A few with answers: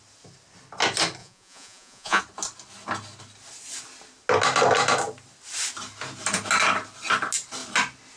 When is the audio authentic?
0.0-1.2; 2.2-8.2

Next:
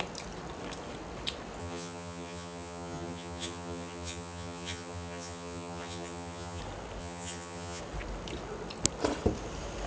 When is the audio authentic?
0.0-1.6; 6.6-7.0; 7.8-9.9

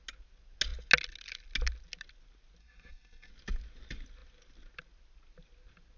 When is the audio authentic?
0.0-2.6; 3.3-6.0

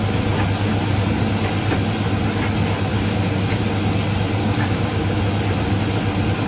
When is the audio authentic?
0.0-2.9; 3.6-4.4; 5.2-6.5

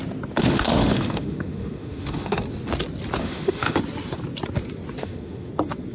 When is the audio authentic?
0.0-0.4; 2.4-3.2; 3.8-5.0; 5.5-5.9

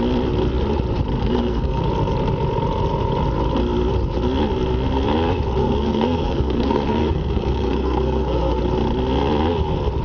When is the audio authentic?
0.0-1.2; 1.8-5.6; 8.6-10.0

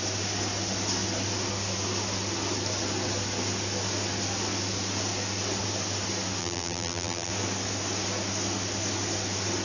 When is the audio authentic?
0.0-6.4; 7.3-9.6

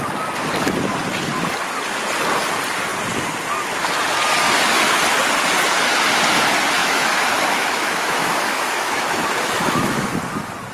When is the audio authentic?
0.0-6.8; 10.1-10.7